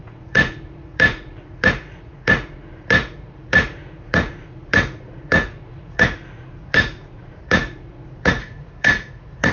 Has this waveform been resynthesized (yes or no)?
yes